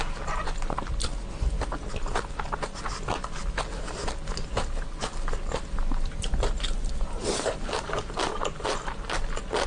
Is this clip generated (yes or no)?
no